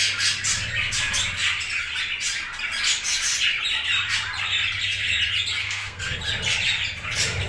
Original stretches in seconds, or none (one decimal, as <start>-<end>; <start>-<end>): 0.0-5.6; 6.2-7.5